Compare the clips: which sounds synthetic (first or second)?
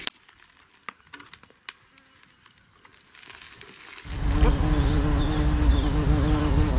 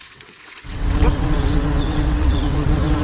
second